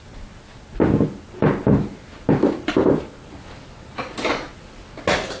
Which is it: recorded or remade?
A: recorded